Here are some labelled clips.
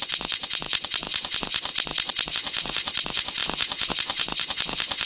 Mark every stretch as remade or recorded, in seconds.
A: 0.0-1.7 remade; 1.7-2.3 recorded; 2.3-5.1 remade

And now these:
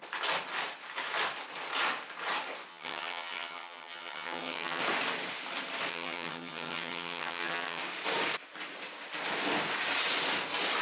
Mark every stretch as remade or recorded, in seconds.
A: 0.0-2.7 recorded; 2.7-4.8 remade; 4.8-5.9 recorded; 5.9-7.8 remade; 7.8-10.8 recorded